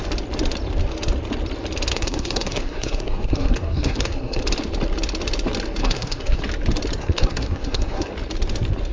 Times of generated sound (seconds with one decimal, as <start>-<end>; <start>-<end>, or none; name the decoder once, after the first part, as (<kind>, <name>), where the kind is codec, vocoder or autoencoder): 1.9-4.4 (codec, SNAC); 5.8-6.4; 7.0-8.1